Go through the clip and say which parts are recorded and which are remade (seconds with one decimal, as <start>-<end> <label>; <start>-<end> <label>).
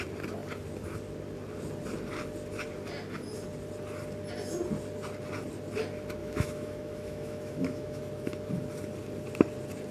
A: 0.0-6.2 recorded; 6.2-8.0 remade; 8.0-9.9 recorded